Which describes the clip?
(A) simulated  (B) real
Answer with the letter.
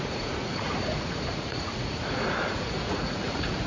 A